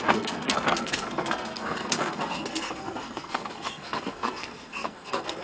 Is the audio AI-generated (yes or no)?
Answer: yes